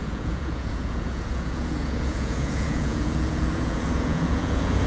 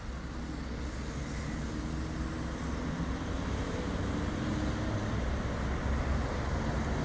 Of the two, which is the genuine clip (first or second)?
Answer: second